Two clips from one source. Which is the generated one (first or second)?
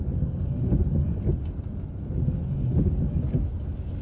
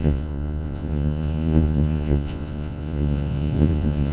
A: second